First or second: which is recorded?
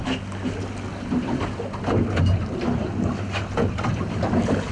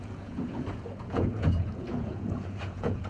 first